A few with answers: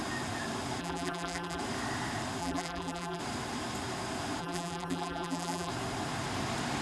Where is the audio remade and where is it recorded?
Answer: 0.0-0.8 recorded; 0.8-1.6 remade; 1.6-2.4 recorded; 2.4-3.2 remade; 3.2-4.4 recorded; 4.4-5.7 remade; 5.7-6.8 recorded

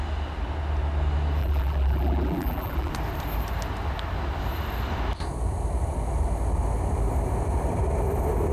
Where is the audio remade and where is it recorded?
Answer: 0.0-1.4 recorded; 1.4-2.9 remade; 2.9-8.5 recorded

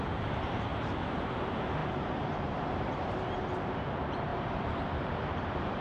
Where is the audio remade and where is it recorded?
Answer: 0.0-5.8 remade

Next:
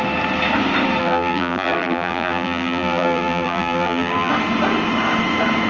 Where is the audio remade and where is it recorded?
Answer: 0.0-1.0 recorded; 1.0-4.3 remade; 4.3-5.7 recorded

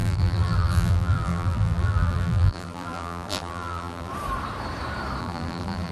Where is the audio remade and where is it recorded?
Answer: 0.0-4.1 remade; 4.1-5.2 recorded; 5.2-5.9 remade

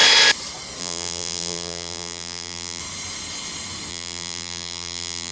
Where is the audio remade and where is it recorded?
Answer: 0.0-0.8 recorded; 0.8-2.8 remade; 2.8-3.9 recorded; 3.9-5.3 remade

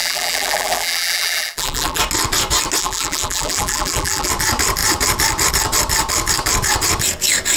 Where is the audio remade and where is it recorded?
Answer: 0.0-2.0 remade; 2.0-2.8 recorded; 2.8-4.3 remade; 4.3-7.6 recorded

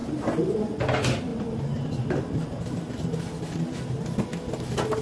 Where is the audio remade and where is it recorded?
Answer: 0.0-0.8 remade; 0.8-1.3 recorded; 1.3-3.2 remade; 3.2-5.0 recorded